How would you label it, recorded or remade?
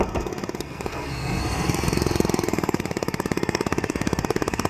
remade